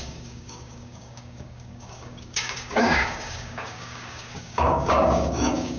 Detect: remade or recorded remade